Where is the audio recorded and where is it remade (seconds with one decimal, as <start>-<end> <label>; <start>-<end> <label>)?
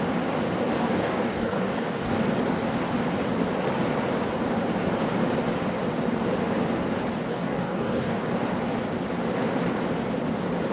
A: 0.0-0.7 recorded; 0.7-2.2 remade; 2.2-7.3 recorded; 7.3-8.2 remade; 8.2-10.7 recorded